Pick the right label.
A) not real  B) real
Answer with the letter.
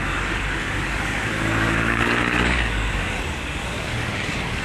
A